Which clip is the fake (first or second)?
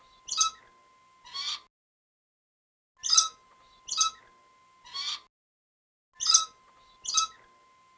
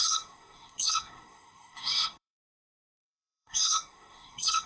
second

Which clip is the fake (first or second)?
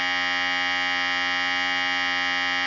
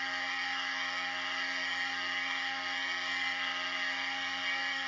second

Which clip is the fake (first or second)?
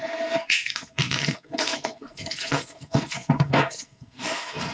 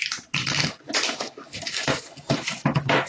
first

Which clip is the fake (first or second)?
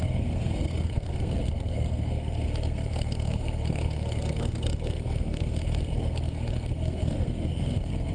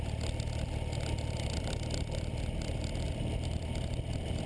first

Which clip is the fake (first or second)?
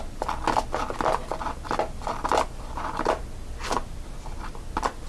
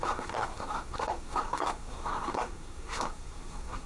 second